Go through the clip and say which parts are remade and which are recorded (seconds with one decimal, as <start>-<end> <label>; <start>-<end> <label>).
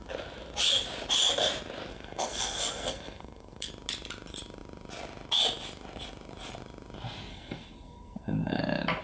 0.0-1.9 recorded; 1.9-3.7 remade; 3.7-7.3 recorded; 7.3-8.6 remade; 8.6-9.0 recorded